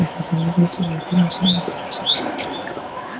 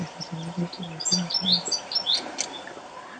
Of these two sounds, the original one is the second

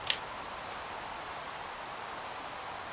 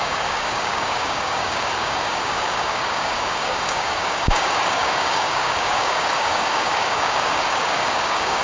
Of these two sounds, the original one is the first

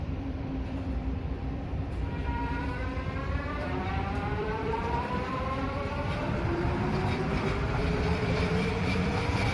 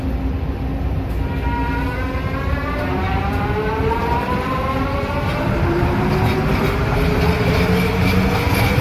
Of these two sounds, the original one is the second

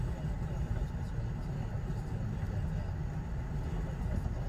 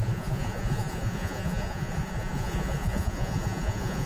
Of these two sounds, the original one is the first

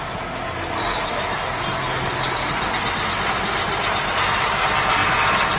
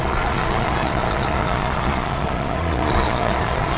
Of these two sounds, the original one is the first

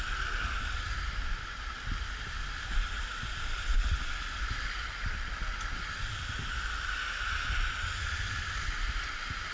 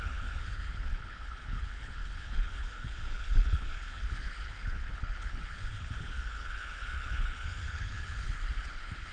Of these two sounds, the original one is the first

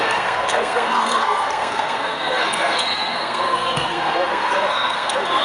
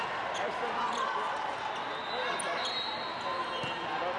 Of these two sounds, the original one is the second